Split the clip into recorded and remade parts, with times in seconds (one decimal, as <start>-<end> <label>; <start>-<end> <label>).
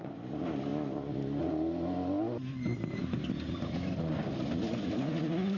0.0-5.6 recorded